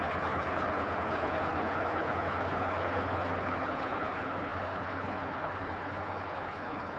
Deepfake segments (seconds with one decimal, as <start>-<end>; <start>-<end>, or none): 0.0-7.0